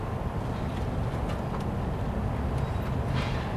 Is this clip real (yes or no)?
yes